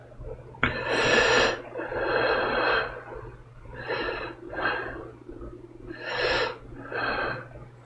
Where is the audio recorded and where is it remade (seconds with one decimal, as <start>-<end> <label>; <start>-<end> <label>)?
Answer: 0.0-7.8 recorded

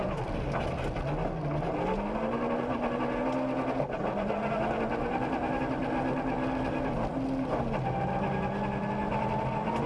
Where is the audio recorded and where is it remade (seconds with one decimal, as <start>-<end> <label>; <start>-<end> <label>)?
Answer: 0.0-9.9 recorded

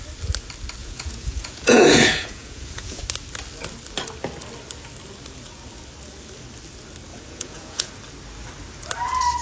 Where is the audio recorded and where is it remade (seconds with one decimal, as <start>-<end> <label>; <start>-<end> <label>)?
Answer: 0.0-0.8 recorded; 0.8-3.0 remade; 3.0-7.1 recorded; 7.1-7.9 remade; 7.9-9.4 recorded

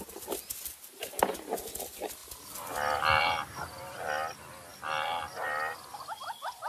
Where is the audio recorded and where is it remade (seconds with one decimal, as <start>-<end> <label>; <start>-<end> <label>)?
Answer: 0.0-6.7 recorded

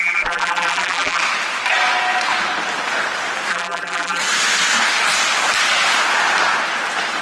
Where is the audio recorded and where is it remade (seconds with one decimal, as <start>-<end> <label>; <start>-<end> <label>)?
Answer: 0.0-1.2 remade; 1.2-3.5 recorded; 3.5-4.2 remade; 4.2-7.2 recorded

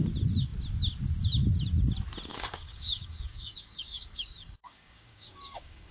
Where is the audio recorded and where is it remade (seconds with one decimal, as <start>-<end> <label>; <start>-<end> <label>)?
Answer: 0.0-2.3 recorded; 2.3-5.9 remade

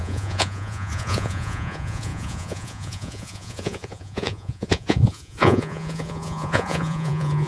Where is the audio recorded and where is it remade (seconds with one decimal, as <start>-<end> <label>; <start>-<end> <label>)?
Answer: 0.0-7.5 remade

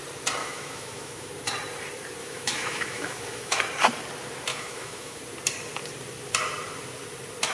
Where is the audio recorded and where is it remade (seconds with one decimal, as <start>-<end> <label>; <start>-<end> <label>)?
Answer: 0.0-0.4 recorded; 0.4-1.3 remade; 1.3-2.2 recorded; 2.2-3.6 remade; 3.6-4.5 recorded; 4.5-5.2 remade; 5.2-7.5 recorded